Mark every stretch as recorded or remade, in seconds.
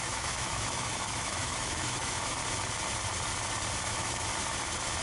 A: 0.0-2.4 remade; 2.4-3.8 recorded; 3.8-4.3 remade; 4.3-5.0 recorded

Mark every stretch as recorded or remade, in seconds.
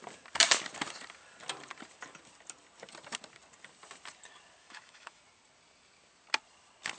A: 0.0-4.6 recorded; 4.6-5.2 remade; 5.2-7.0 recorded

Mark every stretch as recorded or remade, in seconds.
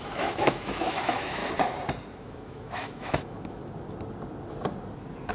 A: 0.0-1.4 remade; 1.4-2.2 recorded; 2.2-3.6 remade; 3.6-5.3 recorded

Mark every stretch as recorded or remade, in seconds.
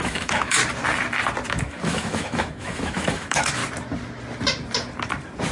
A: 0.0-0.6 remade; 0.6-1.5 recorded; 1.5-3.6 remade; 3.6-5.5 recorded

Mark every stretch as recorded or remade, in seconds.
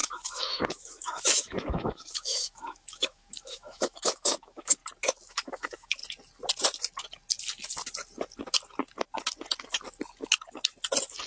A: 0.0-4.8 remade; 4.8-5.3 recorded; 5.3-6.0 remade; 6.0-11.3 recorded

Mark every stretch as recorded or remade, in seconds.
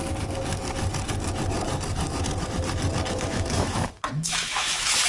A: 0.0-3.1 recorded; 3.1-5.1 remade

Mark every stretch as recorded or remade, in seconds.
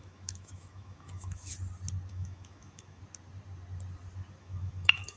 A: 0.0-1.5 remade; 1.5-2.1 recorded; 2.1-3.0 remade; 3.0-4.4 recorded; 4.4-5.2 remade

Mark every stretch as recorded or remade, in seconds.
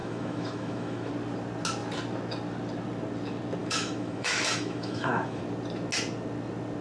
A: 0.0-1.1 remade; 1.1-3.6 recorded; 3.6-5.4 remade; 5.4-6.8 recorded